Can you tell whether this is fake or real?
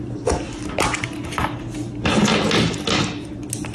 real